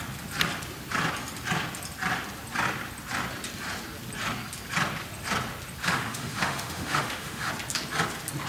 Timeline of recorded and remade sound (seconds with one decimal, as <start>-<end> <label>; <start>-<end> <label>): 0.0-5.8 recorded; 5.8-7.5 remade; 7.5-8.5 recorded